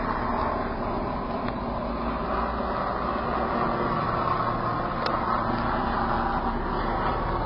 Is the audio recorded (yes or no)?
yes